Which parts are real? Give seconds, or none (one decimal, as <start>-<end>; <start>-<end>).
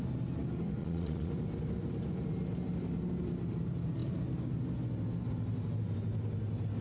0.0-0.8; 1.3-6.8